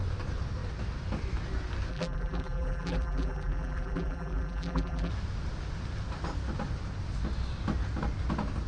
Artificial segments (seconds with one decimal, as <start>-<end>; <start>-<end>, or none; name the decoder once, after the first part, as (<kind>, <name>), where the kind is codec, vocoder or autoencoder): 1.9-5.1 (vocoder, BigVGAN v2)